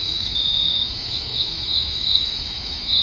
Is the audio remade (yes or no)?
yes